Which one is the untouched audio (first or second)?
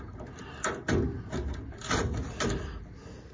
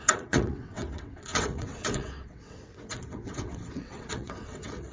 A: first